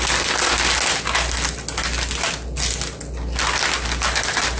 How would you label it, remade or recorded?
recorded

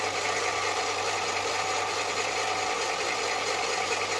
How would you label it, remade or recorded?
recorded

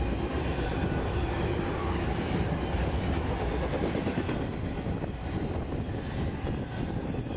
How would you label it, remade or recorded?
recorded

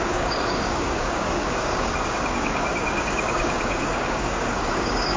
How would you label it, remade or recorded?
remade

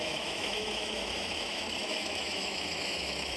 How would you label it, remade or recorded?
remade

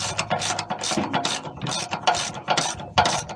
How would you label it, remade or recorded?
recorded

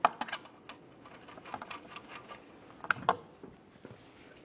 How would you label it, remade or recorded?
recorded